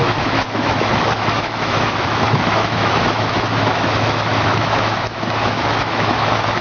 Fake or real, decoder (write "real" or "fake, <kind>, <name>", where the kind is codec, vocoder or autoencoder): fake, autoencoder, DAC-VAE